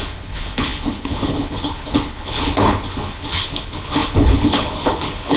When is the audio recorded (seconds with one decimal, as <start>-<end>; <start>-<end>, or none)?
none